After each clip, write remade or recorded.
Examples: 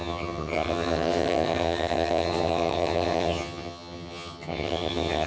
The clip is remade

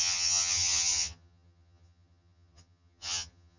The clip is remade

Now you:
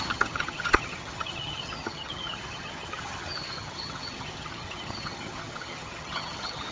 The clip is remade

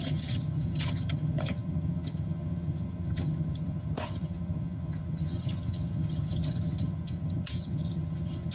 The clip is remade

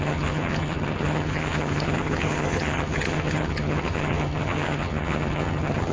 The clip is remade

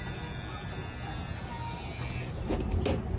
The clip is recorded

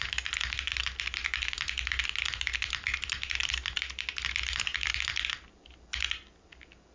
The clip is recorded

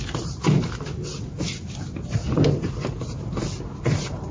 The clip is recorded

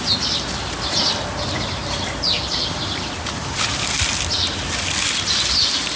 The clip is recorded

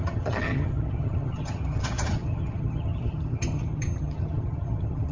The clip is remade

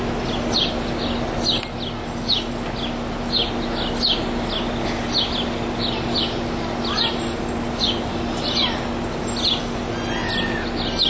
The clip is recorded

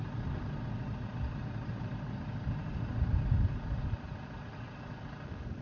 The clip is recorded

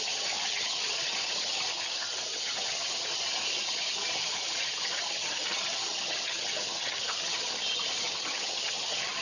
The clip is remade